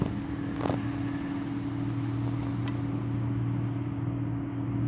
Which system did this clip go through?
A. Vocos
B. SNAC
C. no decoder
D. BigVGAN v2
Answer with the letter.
C